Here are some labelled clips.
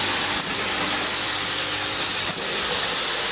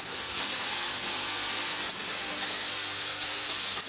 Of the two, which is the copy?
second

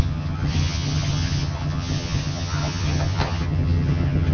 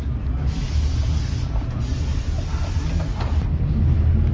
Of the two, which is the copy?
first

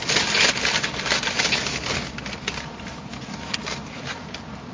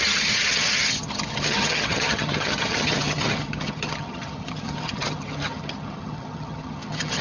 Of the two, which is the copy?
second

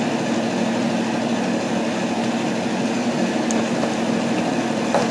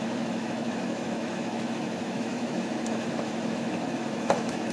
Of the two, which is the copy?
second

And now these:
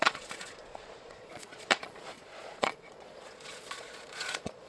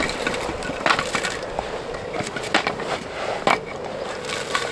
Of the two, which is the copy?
first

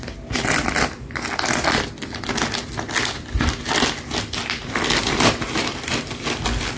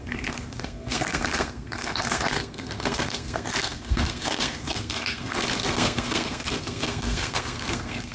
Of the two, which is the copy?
second